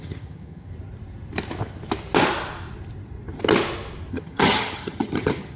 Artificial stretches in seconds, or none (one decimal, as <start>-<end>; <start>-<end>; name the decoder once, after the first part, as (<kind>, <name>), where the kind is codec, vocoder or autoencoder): 0.0-0.7 (vocoder, HiFi-GAN); 4.1-5.6